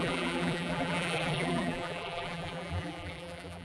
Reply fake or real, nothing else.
fake